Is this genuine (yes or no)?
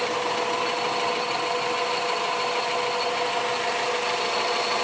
yes